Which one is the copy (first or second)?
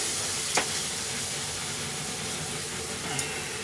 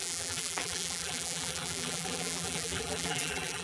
second